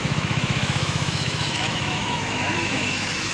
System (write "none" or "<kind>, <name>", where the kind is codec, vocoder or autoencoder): autoencoder, DAC-VAE